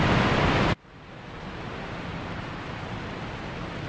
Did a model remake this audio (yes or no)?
no